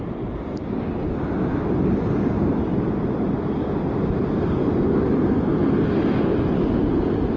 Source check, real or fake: real